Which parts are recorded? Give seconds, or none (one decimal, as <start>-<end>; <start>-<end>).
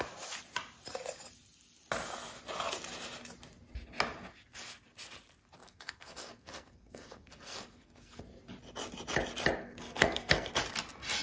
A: 0.0-5.6; 8.2-9.6; 10.5-11.2